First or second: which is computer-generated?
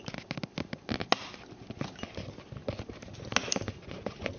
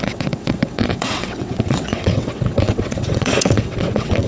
second